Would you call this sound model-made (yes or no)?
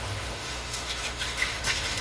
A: yes